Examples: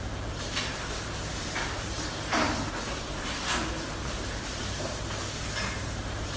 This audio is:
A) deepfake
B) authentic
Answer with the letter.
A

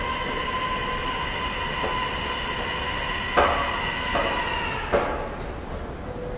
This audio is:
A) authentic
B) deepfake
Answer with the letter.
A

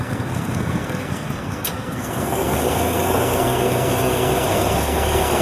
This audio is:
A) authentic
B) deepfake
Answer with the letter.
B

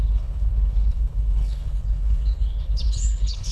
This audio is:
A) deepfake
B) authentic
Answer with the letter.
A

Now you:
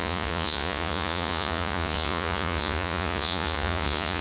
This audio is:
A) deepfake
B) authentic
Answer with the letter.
A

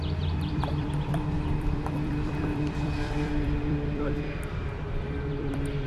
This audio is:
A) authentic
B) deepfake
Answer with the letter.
B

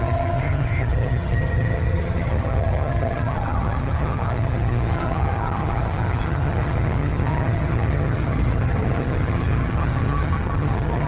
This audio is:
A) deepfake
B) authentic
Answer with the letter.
A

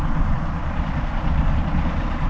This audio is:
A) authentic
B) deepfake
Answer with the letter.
B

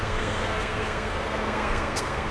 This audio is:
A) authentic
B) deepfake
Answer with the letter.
B